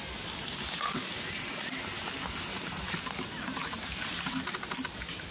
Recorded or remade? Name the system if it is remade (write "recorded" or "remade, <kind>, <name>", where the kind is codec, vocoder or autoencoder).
recorded